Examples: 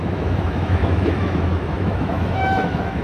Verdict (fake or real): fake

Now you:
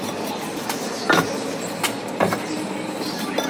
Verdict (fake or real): real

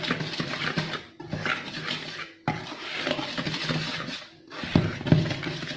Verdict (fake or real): real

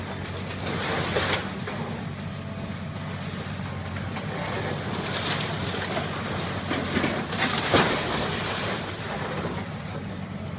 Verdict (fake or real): real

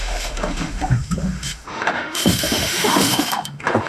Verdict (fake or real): fake